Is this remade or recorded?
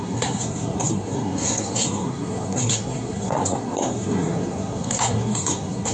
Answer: remade